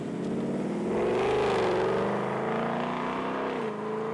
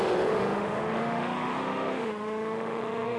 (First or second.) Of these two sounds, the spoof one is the second